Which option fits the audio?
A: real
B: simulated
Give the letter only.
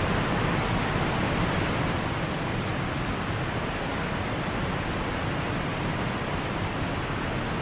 A